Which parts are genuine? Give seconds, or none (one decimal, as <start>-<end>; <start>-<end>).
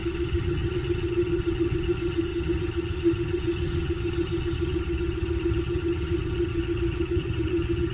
none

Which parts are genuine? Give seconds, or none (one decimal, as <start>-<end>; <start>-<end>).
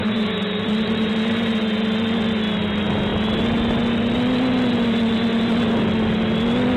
1.1-6.8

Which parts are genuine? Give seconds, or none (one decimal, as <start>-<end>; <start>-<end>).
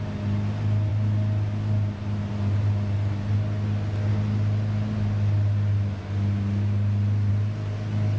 0.0-8.2